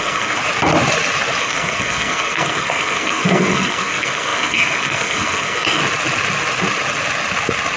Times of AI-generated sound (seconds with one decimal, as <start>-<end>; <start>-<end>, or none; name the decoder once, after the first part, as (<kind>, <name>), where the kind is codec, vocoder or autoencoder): 0.0-0.4 (codec, SNAC); 1.4-5.8